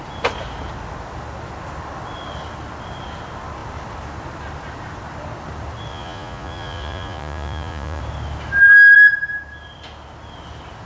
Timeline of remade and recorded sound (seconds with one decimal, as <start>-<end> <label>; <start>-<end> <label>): 0.0-5.9 recorded; 5.9-8.0 remade; 8.0-10.9 recorded